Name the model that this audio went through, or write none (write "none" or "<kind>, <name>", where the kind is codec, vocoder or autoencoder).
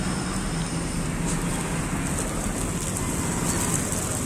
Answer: none